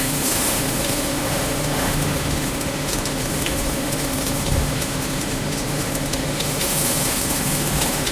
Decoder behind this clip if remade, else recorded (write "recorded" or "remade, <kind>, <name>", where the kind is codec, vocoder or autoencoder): remade, autoencoder, DAC-VAE